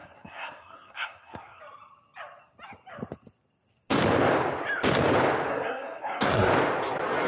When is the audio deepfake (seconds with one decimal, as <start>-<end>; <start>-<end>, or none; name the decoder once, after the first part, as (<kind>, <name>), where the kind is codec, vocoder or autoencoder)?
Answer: 0.0-1.6 (codec, SNAC); 5.5-6.5